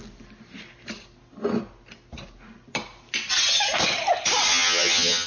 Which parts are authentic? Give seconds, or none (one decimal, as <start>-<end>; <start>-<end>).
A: 0.0-4.5